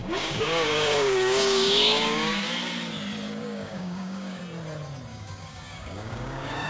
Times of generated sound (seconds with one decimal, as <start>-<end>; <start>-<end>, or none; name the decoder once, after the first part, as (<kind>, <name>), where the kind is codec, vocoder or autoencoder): 0.0-2.4 (codec, DAC); 3.4-4.4; 5.1-6.7